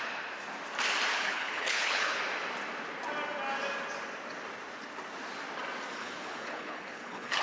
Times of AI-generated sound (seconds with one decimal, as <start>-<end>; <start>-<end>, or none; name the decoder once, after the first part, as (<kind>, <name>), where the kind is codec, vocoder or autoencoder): 1.1-2.2 (codec, HILCodec); 6.0-7.4